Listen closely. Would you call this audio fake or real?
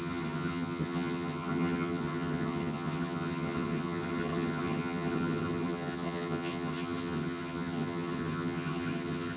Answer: fake